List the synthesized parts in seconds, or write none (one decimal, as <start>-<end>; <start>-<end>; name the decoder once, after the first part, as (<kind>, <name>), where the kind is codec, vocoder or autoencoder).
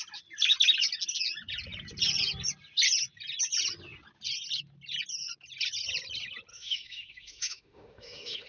6.5-8.5 (autoencoder, DAC-VAE)